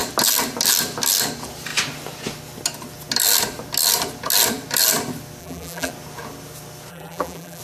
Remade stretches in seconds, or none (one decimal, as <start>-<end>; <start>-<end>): 5.4-5.9; 6.9-7.6